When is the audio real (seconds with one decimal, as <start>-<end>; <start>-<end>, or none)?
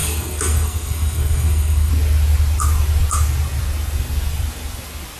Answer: 1.9-5.2